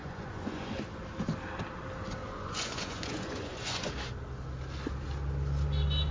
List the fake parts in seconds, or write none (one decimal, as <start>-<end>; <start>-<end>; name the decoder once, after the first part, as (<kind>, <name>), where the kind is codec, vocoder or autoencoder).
0.0-0.7 (vocoder, Vocos); 2.2-3.9